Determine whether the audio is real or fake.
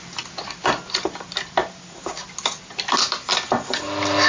real